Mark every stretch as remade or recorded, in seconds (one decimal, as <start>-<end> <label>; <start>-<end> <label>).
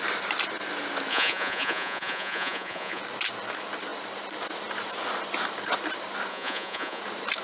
0.0-1.1 recorded; 1.1-3.0 remade; 3.0-6.3 recorded; 6.3-7.0 remade; 7.0-7.4 recorded